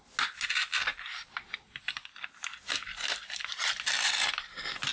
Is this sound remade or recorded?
recorded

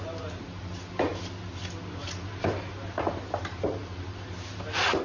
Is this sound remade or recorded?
recorded